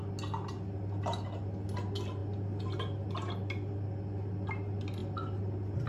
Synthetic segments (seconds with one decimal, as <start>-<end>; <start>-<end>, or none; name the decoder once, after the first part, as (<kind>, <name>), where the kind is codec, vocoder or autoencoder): none